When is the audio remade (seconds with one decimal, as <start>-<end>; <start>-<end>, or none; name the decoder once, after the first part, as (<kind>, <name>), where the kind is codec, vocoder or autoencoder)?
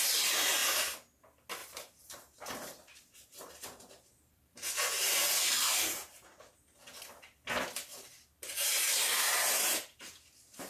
1.6-6.4 (vocoder, BigVGAN v2); 7.9-10.7